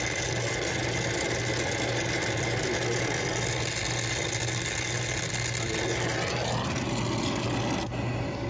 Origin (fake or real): real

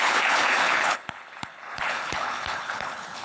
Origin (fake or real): fake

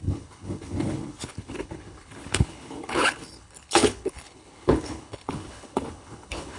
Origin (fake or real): fake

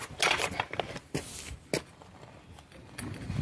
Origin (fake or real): real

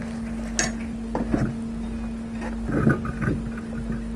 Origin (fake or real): real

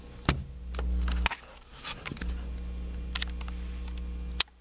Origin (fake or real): real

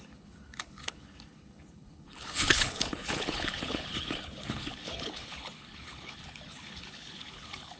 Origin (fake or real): fake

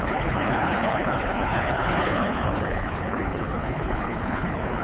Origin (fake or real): fake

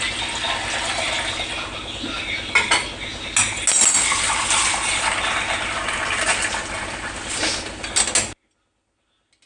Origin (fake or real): real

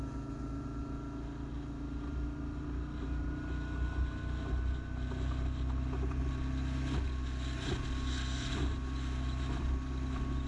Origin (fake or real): real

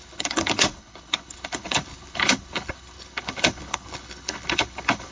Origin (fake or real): fake